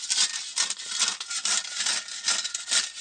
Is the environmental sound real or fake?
real